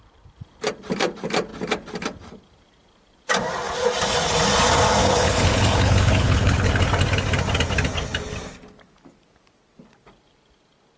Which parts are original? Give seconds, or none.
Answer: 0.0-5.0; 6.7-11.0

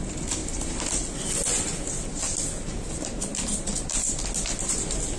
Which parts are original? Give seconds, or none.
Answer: 0.0-5.2

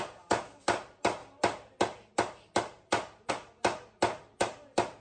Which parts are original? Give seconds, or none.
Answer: 0.0-5.0